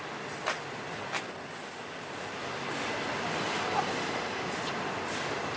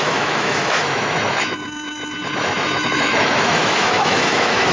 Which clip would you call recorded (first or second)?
first